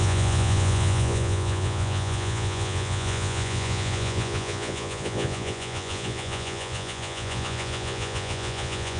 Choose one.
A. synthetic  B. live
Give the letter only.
A